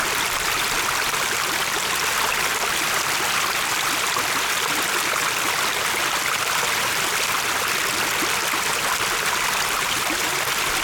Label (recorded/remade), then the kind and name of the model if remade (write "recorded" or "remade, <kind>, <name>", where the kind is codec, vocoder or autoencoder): recorded